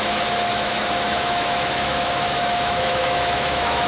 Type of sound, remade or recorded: remade